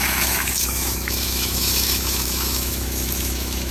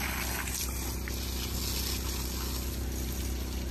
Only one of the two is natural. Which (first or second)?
second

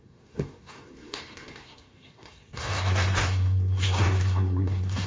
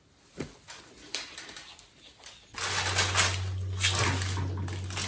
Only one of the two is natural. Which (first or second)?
second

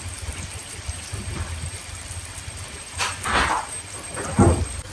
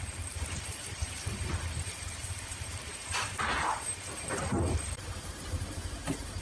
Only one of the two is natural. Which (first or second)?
first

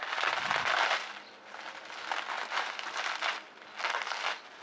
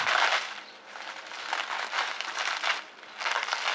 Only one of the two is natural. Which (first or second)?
first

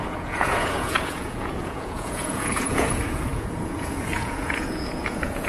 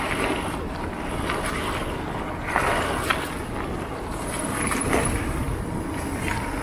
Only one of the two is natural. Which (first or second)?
second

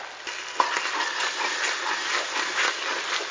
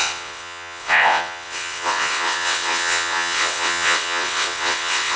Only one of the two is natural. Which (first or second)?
first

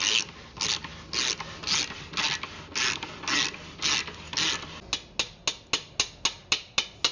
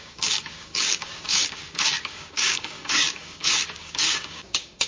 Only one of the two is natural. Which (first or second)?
first